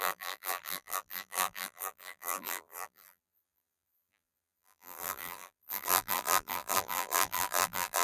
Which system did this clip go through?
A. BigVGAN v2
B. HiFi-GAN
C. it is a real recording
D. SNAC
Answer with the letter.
A